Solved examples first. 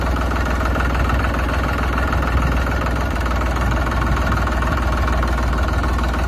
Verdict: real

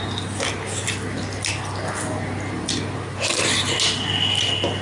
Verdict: real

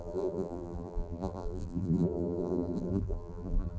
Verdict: fake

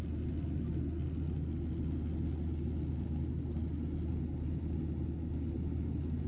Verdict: real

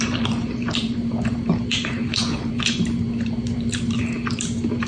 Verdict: fake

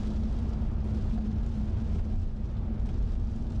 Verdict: real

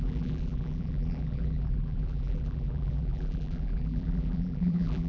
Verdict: fake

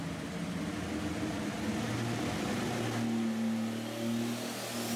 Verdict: real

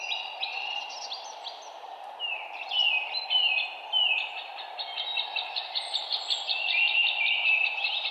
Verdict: real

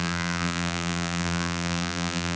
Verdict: fake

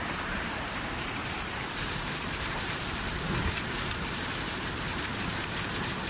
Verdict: fake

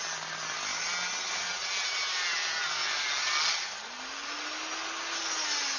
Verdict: real